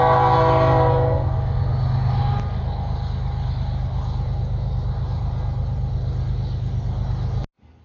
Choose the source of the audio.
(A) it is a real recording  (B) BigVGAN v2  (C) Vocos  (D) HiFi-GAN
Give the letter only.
A